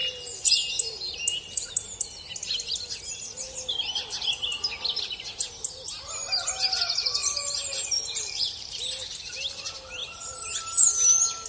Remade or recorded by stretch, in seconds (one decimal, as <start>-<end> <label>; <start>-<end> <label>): 0.0-7.2 recorded; 7.2-8.6 remade; 8.6-10.0 recorded; 10.0-10.6 remade; 10.6-11.5 recorded